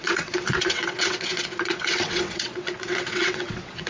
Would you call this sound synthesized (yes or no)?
yes